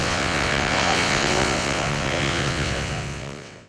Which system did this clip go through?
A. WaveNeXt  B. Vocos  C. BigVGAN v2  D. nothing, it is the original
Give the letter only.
A